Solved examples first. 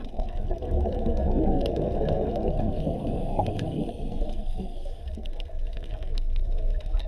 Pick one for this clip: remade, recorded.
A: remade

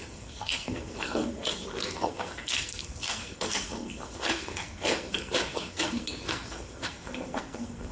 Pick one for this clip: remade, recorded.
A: remade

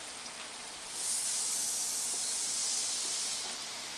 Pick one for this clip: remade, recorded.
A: recorded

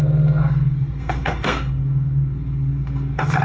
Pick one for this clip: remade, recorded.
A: remade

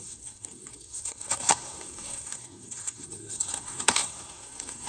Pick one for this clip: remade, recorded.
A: remade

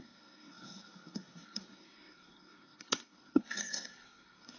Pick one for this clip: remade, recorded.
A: remade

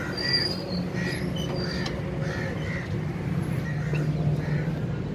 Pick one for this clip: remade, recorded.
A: recorded